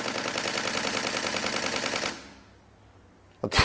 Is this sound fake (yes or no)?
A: no